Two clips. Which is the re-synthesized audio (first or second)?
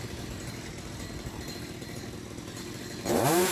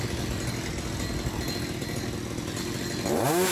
first